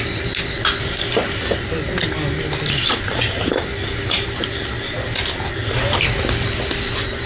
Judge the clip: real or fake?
real